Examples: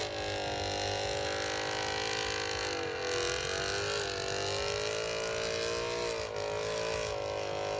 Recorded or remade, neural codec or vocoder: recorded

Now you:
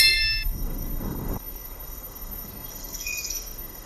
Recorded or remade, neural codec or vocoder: remade, codec, SNAC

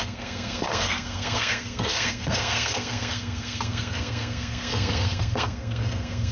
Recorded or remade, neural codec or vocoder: remade, codec, SNAC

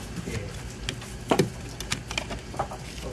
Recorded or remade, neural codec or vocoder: recorded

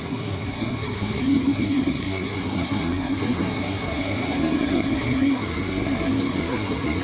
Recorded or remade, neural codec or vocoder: remade, codec, SNAC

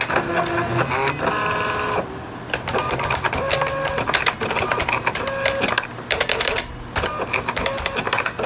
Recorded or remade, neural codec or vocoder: recorded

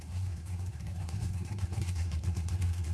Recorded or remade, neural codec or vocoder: remade, codec, SNAC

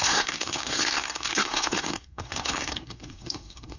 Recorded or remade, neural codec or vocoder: remade, codec, SNAC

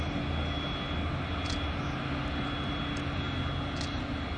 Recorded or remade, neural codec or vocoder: recorded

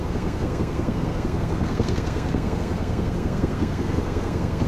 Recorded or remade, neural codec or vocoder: remade, codec, SNAC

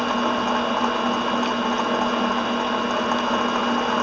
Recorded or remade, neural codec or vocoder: recorded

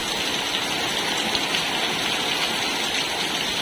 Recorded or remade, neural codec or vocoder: recorded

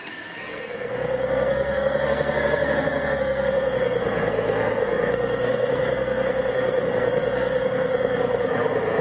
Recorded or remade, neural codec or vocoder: remade, codec, SNAC